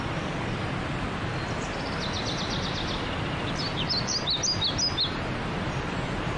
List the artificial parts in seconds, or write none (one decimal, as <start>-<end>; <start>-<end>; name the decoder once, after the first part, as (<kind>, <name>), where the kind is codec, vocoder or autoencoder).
none